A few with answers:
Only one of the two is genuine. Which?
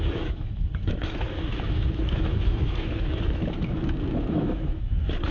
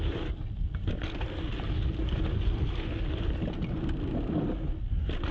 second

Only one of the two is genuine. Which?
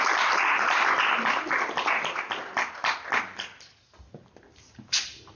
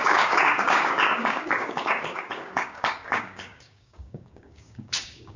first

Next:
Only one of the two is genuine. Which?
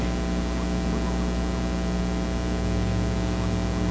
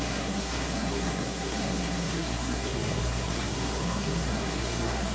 first